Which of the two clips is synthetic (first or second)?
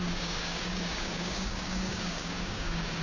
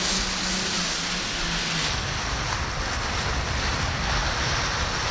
first